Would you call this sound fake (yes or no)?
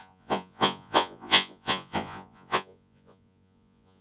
yes